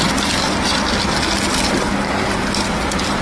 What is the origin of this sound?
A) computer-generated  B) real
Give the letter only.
B